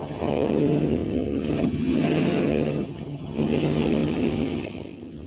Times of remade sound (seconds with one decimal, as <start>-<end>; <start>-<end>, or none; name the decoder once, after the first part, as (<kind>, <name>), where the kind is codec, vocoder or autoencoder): 0.0-5.3 (vocoder, HiFi-GAN)